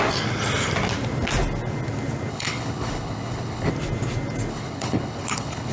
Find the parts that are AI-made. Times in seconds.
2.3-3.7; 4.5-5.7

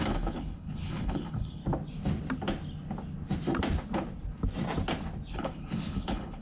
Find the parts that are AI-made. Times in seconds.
0.0-1.6; 5.3-6.4